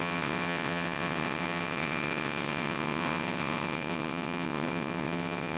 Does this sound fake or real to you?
fake